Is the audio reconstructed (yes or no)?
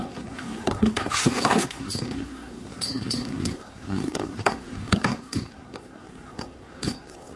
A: yes